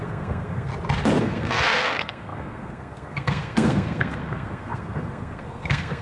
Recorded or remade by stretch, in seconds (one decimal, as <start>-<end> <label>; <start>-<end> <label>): 0.0-0.7 remade; 0.7-1.2 recorded; 1.2-6.0 remade